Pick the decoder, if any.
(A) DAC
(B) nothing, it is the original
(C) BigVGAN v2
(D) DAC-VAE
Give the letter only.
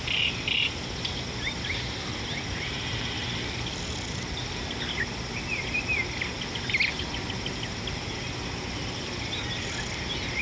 B